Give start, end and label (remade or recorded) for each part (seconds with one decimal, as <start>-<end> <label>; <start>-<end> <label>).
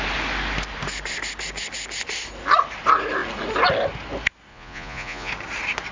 0.0-4.5 recorded; 4.5-5.3 remade; 5.3-5.9 recorded